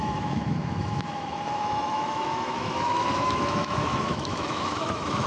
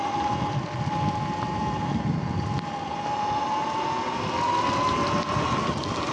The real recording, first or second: second